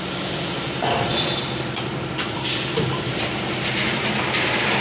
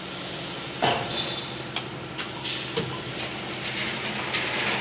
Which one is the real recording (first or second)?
second